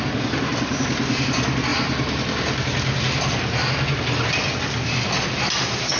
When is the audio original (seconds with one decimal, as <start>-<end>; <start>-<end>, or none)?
0.0-6.0